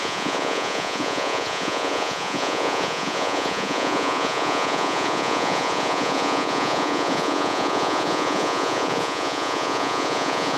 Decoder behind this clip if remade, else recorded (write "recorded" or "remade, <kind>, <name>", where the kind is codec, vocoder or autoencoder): remade, vocoder, Vocos